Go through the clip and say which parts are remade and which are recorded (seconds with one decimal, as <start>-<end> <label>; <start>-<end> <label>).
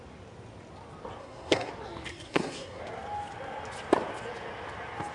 0.0-1.2 recorded; 1.2-1.7 remade; 1.7-2.1 recorded; 2.1-2.8 remade; 2.8-5.1 recorded